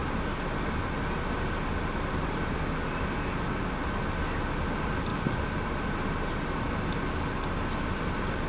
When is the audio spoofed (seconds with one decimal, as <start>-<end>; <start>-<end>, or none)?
none